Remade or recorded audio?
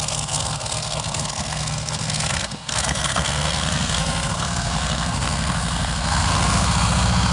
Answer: remade